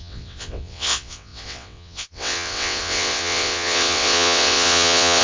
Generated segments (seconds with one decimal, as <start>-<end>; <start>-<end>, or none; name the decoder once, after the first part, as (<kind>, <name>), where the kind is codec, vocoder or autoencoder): 0.0-5.2 (vocoder, WaveNeXt)